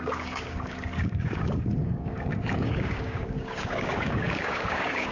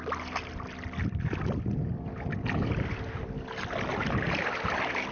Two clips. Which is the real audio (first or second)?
second